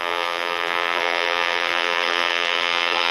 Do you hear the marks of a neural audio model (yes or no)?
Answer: yes